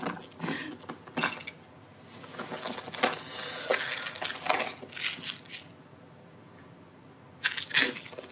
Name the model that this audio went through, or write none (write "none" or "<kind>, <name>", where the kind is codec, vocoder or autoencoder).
none